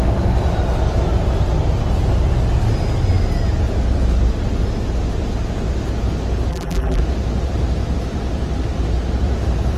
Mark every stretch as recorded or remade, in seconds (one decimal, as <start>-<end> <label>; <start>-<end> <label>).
0.0-6.5 recorded; 6.5-7.0 remade; 7.0-9.8 recorded